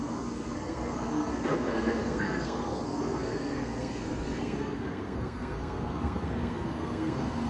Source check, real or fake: fake